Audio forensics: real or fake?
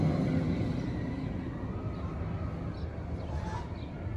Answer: real